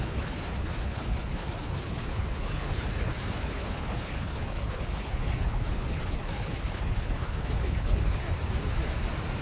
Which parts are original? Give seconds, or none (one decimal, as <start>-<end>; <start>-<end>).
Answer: 8.2-9.4